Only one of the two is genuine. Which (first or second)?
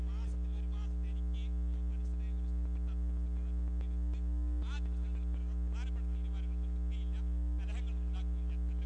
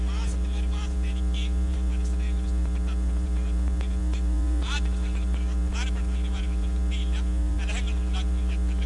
first